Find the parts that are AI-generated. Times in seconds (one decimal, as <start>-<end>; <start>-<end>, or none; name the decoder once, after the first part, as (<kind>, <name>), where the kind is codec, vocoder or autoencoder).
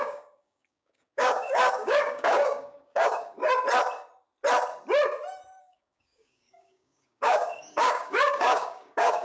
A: 0.0-3.4 (codec, DAC); 5.6-9.2